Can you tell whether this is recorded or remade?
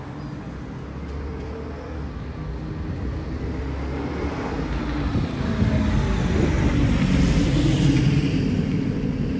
recorded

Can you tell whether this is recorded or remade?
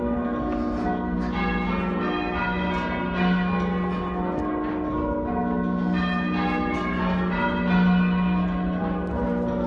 recorded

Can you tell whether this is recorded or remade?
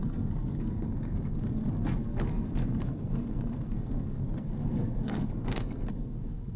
remade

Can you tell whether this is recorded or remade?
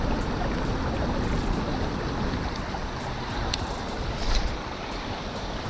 recorded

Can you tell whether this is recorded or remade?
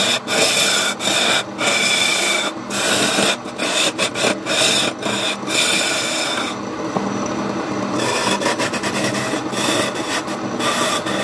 recorded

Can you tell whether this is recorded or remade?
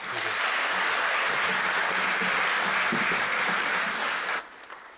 recorded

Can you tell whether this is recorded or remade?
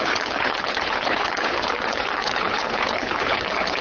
remade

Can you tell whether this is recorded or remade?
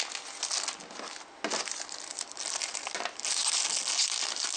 recorded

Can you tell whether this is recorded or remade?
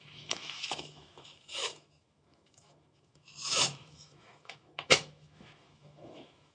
remade